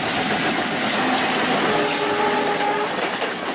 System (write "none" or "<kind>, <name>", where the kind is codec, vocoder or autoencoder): none